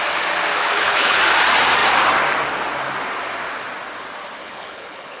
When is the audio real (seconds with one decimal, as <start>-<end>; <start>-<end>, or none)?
0.0-0.6; 1.2-4.4